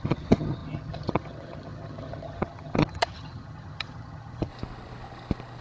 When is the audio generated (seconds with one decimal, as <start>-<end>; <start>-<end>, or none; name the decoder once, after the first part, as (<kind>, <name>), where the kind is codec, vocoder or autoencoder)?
0.0-4.5 (vocoder, HiFi-GAN)